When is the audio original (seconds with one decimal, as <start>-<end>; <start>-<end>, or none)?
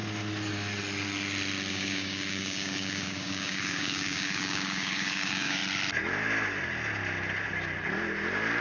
0.0-1.7; 5.6-8.6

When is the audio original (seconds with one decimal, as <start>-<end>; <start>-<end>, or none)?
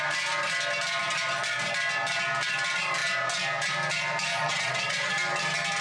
0.0-4.3; 5.1-5.8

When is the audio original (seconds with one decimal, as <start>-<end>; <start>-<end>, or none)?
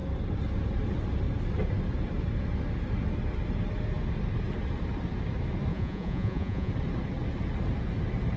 0.0-5.7; 6.7-8.4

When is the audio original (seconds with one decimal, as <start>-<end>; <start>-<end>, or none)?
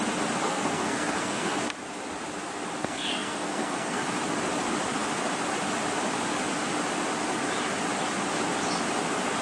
0.0-0.4; 1.6-2.8; 4.0-9.4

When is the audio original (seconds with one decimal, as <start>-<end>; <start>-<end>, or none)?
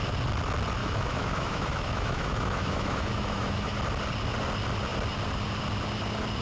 0.0-0.8; 3.8-6.4